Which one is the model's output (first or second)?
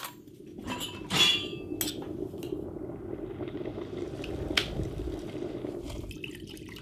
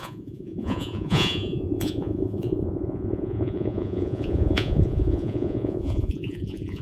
second